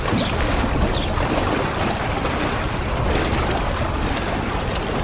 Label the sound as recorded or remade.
recorded